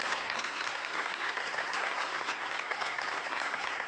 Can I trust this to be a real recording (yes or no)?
no